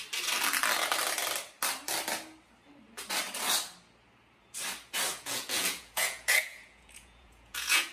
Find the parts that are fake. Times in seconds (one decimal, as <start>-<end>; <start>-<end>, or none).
5.1-7.9

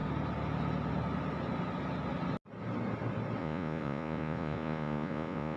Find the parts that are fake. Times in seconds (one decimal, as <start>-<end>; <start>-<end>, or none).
3.4-5.6

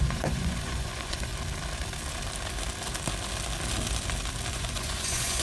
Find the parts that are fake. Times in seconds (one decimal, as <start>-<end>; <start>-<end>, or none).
0.0-1.3; 4.5-5.4

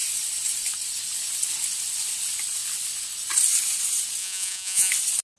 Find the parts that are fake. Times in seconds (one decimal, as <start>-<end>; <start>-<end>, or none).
4.2-4.9

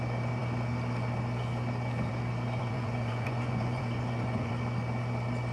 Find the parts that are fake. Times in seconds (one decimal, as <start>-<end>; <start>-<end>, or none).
2.6-4.5

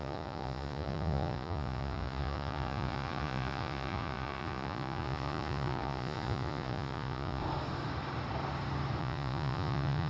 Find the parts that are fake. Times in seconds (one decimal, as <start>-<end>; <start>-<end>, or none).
0.0-7.4; 9.0-10.1